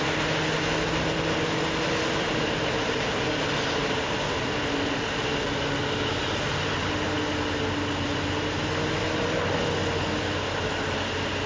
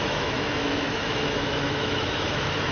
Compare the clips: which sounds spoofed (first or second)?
second